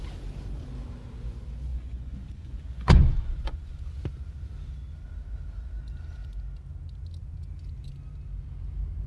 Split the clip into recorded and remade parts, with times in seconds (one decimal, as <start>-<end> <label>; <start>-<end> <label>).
0.0-1.7 recorded; 1.7-3.8 remade; 3.8-9.1 recorded